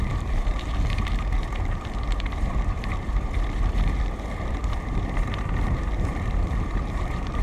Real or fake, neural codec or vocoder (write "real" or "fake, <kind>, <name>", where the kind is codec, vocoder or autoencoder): fake, vocoder, BigVGAN v2